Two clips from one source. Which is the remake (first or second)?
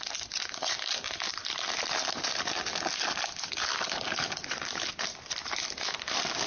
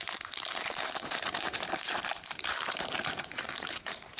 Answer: second